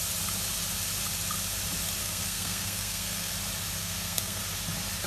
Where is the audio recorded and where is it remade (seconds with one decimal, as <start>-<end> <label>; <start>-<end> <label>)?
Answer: 0.0-2.0 recorded; 2.0-3.3 remade; 3.3-3.8 recorded; 3.8-4.4 remade; 4.4-5.1 recorded